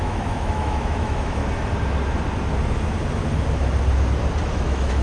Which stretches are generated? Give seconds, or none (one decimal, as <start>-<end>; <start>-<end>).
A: 0.0-1.4; 4.4-5.0